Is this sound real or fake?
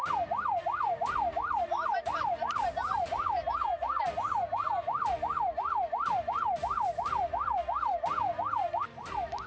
real